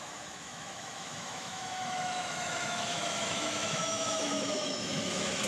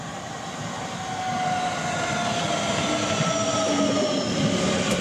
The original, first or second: second